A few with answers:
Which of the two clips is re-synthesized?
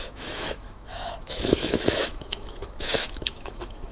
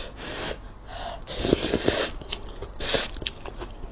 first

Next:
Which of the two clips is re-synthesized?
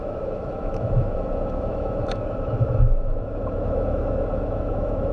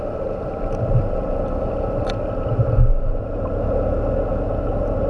first